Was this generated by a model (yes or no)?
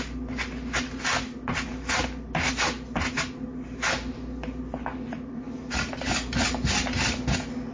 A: no